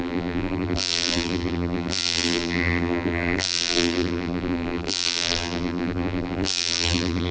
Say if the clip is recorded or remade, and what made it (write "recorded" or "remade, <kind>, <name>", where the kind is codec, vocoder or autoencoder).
remade, vocoder, BigVGAN v2